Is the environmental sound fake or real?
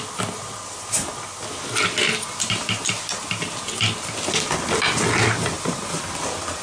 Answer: real